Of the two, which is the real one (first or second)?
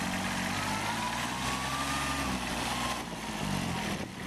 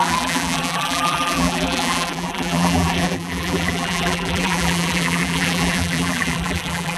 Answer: first